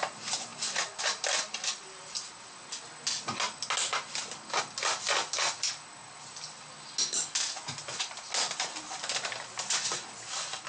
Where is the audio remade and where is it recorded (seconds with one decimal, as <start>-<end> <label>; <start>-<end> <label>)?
0.0-10.7 recorded